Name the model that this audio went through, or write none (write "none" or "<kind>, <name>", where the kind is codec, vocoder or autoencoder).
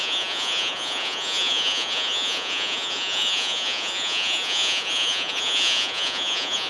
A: vocoder, Vocos